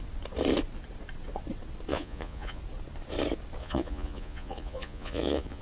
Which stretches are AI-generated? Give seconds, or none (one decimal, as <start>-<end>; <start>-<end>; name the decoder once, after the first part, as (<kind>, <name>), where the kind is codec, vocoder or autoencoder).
1.9-2.6 (vocoder, Vocos); 3.6-5.6